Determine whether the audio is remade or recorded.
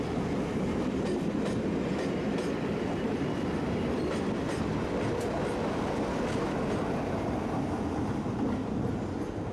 recorded